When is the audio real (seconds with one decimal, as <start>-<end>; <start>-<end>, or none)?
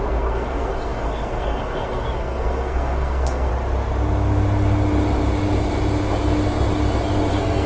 3.5-7.3